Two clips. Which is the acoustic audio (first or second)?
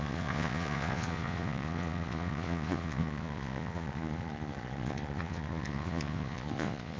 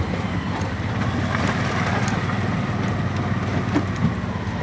second